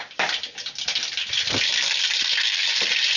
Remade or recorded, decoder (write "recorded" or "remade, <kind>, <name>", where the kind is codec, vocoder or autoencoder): recorded